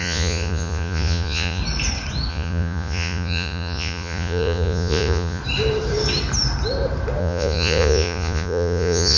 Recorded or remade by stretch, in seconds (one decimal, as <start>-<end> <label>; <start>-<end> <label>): 0.0-1.6 remade; 1.6-2.3 recorded; 2.3-5.4 remade; 5.4-7.2 recorded; 7.2-9.2 remade